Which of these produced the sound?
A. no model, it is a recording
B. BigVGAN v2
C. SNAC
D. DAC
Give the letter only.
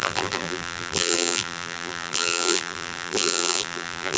B